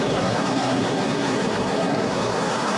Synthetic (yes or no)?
yes